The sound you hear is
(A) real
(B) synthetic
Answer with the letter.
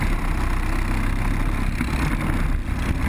A